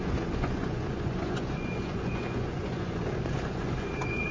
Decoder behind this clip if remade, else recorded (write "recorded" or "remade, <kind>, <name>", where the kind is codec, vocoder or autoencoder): remade, vocoder, Vocos